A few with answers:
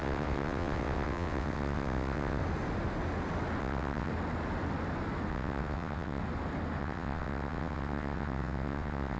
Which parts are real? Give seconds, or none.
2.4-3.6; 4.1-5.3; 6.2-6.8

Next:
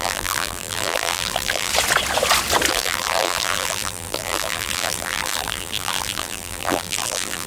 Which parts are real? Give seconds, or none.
1.7-2.7

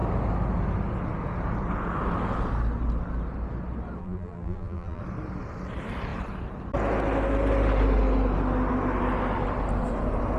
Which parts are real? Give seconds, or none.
0.0-4.0; 5.0-10.4